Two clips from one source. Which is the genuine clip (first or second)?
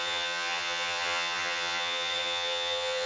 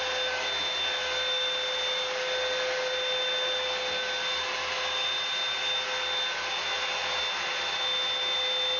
second